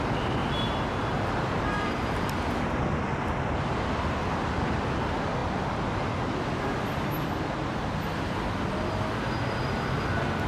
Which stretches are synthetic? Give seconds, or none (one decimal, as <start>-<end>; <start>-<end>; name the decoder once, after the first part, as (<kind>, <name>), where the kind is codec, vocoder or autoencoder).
0.4-2.3 (vocoder, BigVGAN v2)

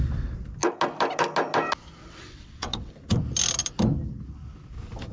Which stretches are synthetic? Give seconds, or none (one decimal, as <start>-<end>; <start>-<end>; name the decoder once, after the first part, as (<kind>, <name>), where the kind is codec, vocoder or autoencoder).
2.0-2.9 (vocoder, WaveNeXt)

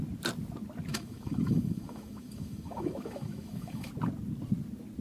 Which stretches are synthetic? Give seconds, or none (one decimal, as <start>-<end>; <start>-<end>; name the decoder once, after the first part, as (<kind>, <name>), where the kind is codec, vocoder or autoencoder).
0.9-3.9 (autoencoder, DAC-VAE)

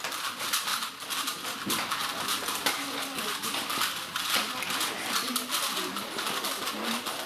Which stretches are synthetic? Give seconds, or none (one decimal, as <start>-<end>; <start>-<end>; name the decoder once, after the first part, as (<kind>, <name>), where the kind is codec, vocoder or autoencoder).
none

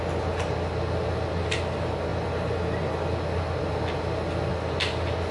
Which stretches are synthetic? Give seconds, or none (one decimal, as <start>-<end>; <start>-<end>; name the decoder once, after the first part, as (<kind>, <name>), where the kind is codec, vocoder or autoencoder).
none